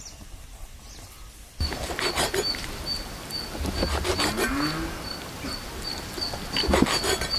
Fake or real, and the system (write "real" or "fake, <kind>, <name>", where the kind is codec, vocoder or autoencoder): real